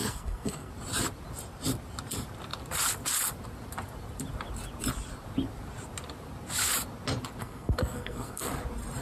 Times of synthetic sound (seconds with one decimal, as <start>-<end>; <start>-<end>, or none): 0.0-0.7; 7.4-8.5